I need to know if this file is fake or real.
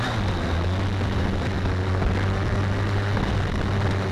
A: real